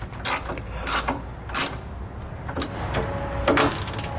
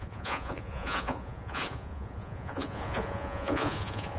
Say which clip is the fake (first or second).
second